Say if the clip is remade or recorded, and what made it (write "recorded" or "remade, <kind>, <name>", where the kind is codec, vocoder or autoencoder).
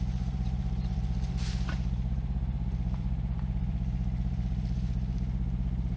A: remade, vocoder, BigVGAN v2